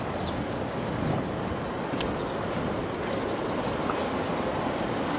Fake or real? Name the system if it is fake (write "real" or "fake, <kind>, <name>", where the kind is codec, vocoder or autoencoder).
real